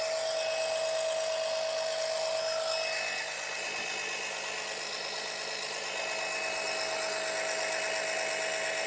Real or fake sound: real